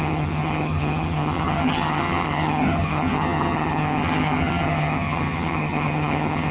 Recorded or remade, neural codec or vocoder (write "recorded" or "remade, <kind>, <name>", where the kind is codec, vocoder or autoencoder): remade, vocoder, HiFi-GAN